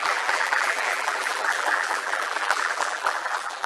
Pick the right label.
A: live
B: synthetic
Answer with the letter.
B